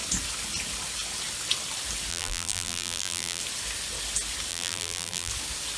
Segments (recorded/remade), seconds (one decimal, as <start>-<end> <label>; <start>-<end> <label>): 0.0-2.1 recorded; 2.1-3.4 remade; 3.4-4.5 recorded; 4.5-5.3 remade; 5.3-5.8 recorded